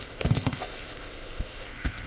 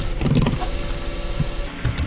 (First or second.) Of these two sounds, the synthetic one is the first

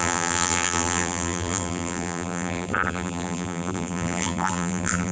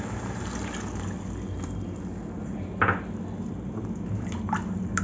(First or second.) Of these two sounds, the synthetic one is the first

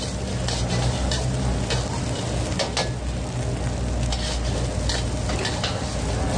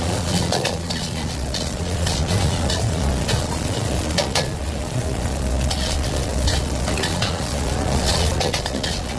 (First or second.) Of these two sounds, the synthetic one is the second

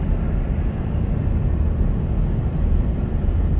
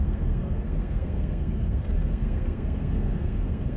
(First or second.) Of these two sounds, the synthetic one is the second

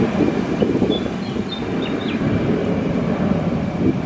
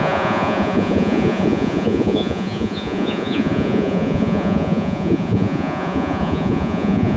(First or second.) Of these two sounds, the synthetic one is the second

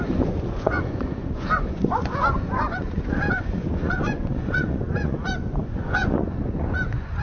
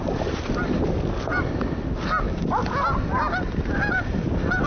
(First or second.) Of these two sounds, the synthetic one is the first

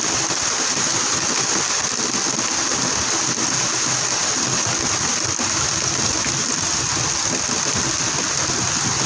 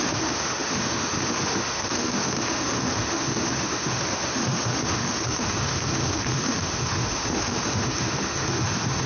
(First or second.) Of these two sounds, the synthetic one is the second